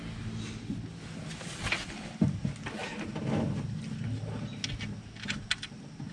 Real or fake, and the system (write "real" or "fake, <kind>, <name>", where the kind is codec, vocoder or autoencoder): real